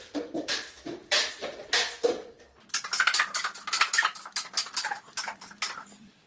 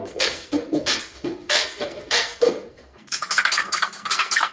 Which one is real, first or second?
first